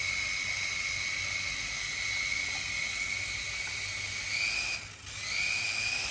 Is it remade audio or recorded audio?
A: recorded